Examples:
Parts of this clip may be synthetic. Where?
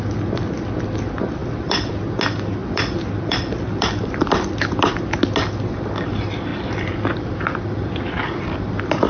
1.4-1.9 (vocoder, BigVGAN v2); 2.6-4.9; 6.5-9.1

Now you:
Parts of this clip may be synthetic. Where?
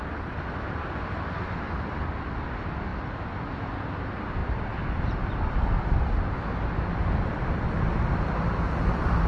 0.0-2.9 (vocoder, BigVGAN v2); 3.6-9.3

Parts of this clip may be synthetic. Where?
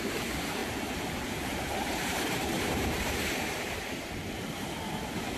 0.6-3.8 (vocoder, BigVGAN v2)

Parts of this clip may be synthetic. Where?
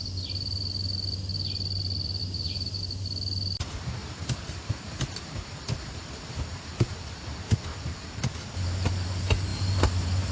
2.2-2.8 (vocoder, BigVGAN v2); 4.0-8.2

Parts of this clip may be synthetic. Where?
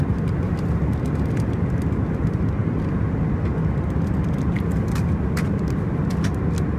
none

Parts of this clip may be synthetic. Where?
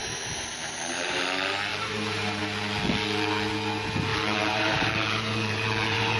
0.0-1.2 (vocoder, BigVGAN v2); 1.7-2.4; 4.1-6.2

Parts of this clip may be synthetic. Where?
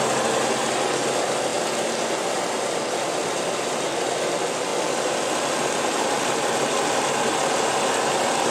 4.7-7.3 (vocoder, BigVGAN v2)